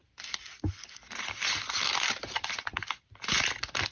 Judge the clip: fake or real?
real